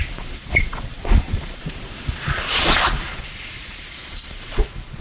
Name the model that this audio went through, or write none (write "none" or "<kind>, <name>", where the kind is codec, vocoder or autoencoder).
vocoder, Vocos